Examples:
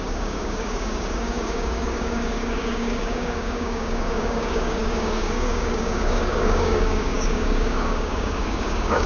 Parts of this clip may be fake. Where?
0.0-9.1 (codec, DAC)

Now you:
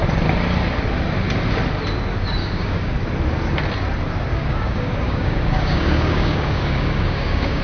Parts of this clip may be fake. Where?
2.4-2.9 (codec, DAC); 4.3-7.6